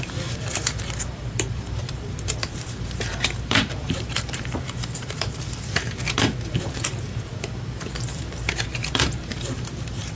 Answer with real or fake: fake